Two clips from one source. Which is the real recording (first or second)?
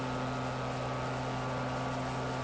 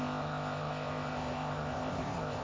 first